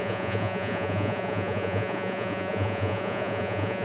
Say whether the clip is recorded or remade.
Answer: remade